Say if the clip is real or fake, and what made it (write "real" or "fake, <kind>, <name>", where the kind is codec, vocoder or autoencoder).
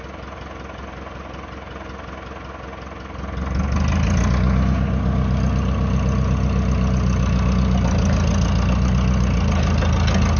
real